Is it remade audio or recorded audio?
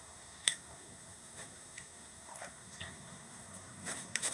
remade